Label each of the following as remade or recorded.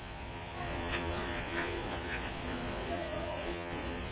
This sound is remade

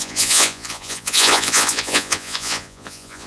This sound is remade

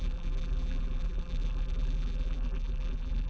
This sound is remade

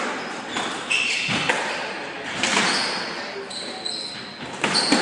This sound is recorded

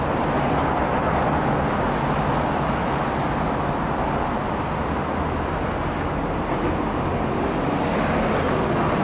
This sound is recorded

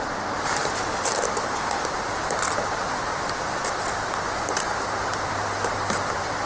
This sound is recorded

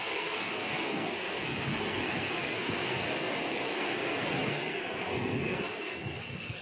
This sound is remade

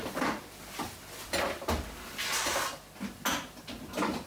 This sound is recorded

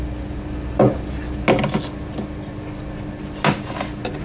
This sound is recorded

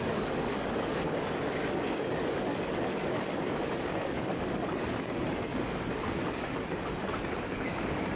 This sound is remade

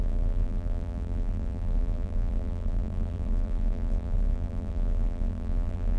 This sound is remade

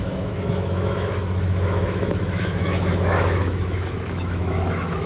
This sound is remade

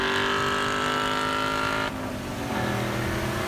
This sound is recorded